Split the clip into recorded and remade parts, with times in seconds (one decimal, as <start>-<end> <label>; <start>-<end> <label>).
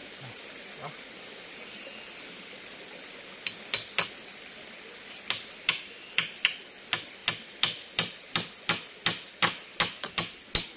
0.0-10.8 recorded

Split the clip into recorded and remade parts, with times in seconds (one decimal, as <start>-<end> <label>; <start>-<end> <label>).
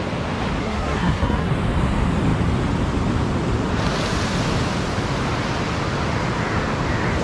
0.0-0.6 recorded; 0.6-1.5 remade; 1.5-7.2 recorded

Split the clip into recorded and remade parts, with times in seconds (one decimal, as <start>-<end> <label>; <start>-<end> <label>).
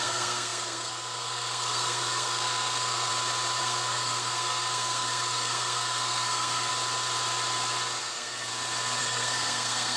0.0-3.1 remade; 3.1-3.6 recorded; 3.6-6.7 remade; 6.7-8.0 recorded; 8.0-8.5 remade; 8.5-9.0 recorded; 9.0-10.0 remade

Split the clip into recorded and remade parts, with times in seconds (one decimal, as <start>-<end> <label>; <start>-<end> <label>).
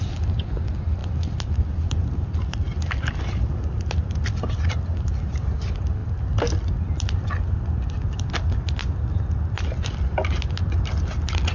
0.0-11.5 recorded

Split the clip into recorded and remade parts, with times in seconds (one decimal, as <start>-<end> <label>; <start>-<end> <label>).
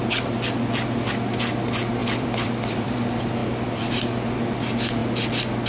0.0-2.0 recorded; 2.0-3.0 remade; 3.0-3.4 recorded; 3.4-3.9 remade; 3.9-5.7 recorded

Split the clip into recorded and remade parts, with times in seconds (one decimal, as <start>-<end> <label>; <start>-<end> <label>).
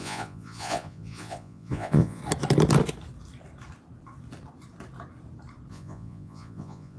0.0-2.2 remade; 2.2-5.7 recorded; 5.7-7.0 remade